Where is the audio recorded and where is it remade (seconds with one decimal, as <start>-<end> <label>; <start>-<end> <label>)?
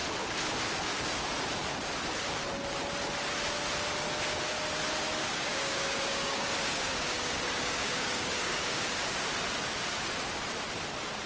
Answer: 0.0-5.2 recorded; 5.2-8.8 remade; 8.8-11.3 recorded